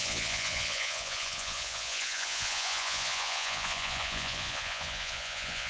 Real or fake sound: fake